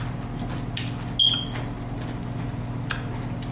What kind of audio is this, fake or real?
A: real